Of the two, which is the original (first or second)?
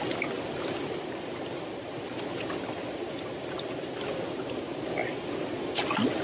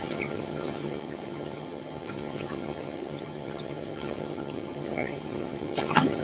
first